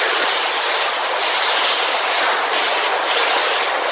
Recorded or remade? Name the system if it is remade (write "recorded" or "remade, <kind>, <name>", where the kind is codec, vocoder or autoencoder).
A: recorded